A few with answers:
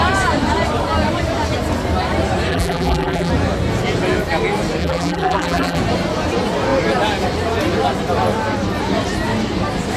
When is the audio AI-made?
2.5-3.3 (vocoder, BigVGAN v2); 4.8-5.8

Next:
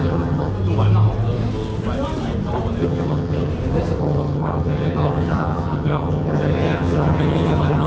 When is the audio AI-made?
0.0-0.5 (vocoder, HiFi-GAN); 2.8-3.5; 4.0-7.9

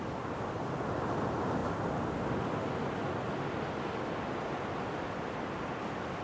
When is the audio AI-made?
none

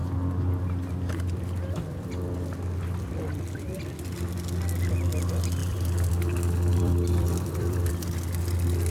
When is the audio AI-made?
5.6-6.1 (vocoder, BigVGAN v2); 6.7-7.9

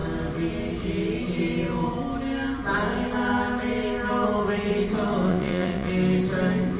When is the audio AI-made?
5.3-5.9 (vocoder, WaveNeXt)

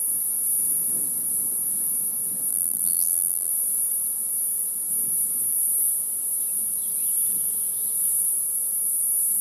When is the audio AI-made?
2.5-3.5 (vocoder, BigVGAN v2)

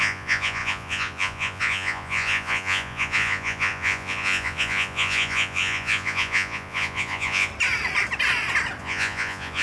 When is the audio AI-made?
0.0-7.5 (vocoder, Vocos); 8.8-9.6